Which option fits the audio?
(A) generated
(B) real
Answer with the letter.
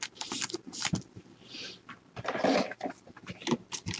A